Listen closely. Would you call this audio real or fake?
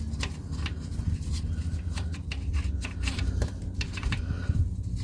fake